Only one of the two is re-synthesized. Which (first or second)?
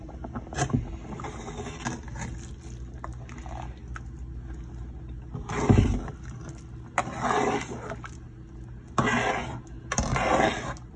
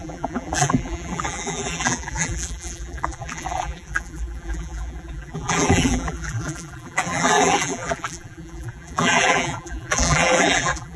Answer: second